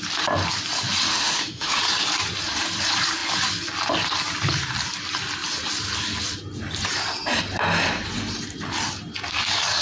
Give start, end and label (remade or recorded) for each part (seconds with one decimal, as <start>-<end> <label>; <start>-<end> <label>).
0.0-1.1 recorded; 1.1-1.8 remade; 1.8-9.8 recorded

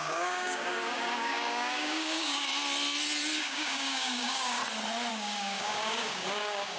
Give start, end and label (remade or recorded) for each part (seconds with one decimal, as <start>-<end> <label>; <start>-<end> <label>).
0.0-2.5 remade; 2.5-3.4 recorded; 3.4-4.6 remade; 4.6-5.1 recorded; 5.1-6.8 remade

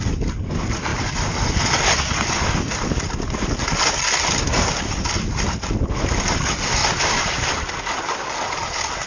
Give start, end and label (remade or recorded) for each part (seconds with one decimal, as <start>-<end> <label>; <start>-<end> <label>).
0.0-9.1 recorded

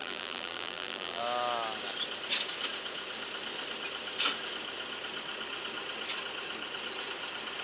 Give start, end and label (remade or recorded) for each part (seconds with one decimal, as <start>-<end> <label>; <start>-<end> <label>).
0.0-1.2 remade; 1.2-7.6 recorded

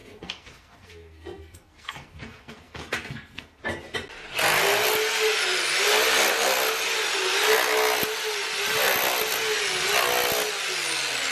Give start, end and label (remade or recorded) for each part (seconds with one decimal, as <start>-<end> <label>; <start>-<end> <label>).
0.0-3.6 remade; 3.6-11.3 recorded

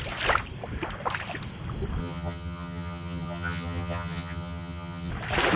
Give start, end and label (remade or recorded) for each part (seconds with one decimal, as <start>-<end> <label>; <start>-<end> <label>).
0.0-2.0 recorded; 2.0-5.1 remade; 5.1-5.6 recorded